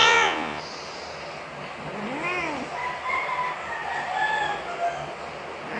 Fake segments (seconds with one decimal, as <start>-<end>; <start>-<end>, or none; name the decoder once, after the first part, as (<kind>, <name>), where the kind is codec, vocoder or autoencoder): 0.0-0.6 (vocoder, Vocos)